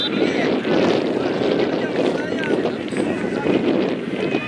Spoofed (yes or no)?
no